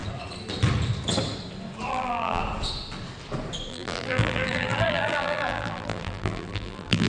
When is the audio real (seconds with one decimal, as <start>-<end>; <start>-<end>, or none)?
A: 0.0-1.9; 2.4-3.7